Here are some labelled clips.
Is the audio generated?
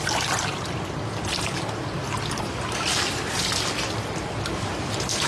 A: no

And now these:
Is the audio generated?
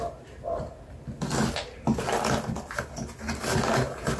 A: no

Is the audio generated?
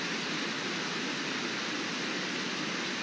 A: no